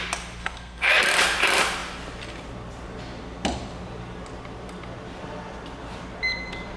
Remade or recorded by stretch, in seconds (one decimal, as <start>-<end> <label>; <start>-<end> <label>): 0.0-0.4 recorded; 0.4-0.9 remade; 0.9-6.8 recorded